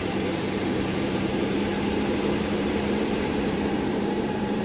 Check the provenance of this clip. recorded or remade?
remade